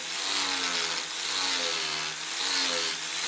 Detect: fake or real real